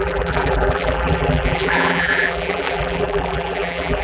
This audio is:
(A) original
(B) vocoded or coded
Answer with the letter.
B